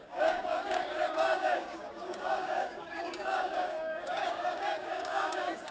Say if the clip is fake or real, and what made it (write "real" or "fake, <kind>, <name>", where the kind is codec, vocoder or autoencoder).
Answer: fake, codec, DAC